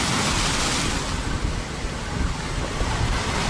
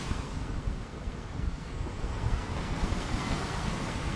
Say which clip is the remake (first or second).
second